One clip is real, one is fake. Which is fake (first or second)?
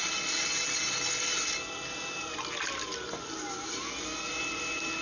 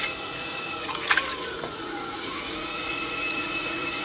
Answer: second